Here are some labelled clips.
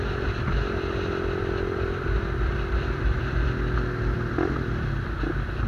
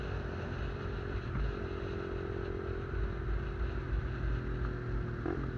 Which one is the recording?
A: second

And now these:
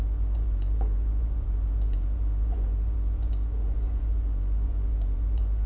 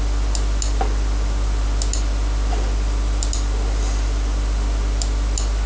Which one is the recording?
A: second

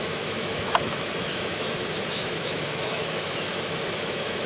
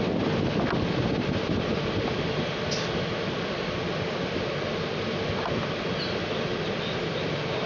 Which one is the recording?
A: second